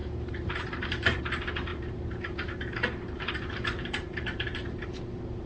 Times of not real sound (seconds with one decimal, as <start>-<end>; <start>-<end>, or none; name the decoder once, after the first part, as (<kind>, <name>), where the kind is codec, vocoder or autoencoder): 0.0-1.2 (vocoder, BigVGAN v2); 1.7-5.0